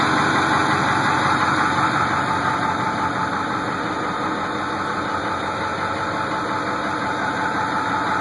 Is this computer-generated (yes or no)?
no